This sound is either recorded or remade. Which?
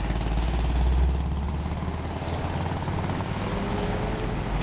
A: recorded